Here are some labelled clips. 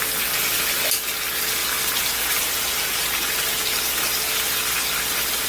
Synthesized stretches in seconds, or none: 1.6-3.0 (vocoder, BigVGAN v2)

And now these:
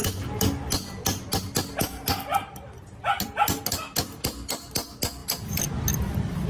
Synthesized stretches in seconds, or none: none

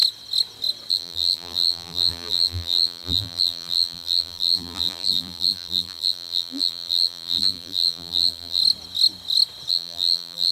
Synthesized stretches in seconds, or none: 0.9-8.6 (vocoder, BigVGAN v2); 9.7-10.5

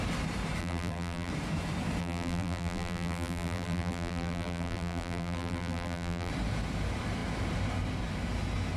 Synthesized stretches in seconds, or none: 0.6-1.3 (vocoder, BigVGAN v2); 2.0-6.3